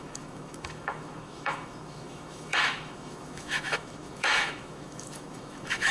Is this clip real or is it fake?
fake